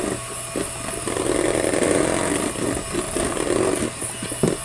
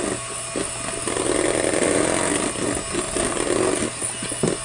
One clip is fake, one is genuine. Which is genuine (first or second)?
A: second